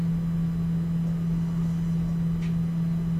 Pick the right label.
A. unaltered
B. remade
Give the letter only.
A